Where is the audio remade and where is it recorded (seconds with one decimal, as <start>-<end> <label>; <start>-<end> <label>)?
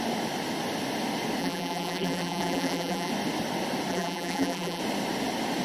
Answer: 0.0-1.4 recorded; 1.4-3.1 remade; 3.1-3.9 recorded; 3.9-4.8 remade; 4.8-5.6 recorded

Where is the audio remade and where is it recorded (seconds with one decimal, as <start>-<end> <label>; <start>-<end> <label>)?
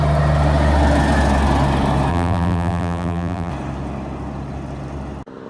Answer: 0.0-2.1 recorded; 2.1-3.5 remade; 3.5-5.5 recorded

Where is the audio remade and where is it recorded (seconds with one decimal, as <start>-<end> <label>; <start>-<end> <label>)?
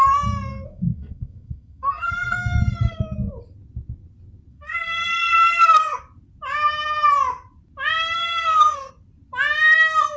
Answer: 0.0-0.5 recorded; 0.5-3.3 remade; 3.3-4.5 recorded; 4.5-6.0 remade; 6.0-8.2 recorded; 8.2-8.9 remade; 8.9-10.2 recorded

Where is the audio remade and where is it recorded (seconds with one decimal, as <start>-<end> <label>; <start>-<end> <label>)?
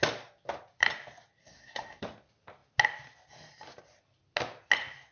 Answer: 0.0-1.4 recorded; 1.4-2.0 remade; 2.0-5.1 recorded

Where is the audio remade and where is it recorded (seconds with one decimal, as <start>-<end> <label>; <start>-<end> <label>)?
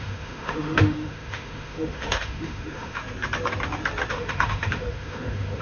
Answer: 0.0-3.0 remade; 3.0-4.1 recorded; 4.1-5.6 remade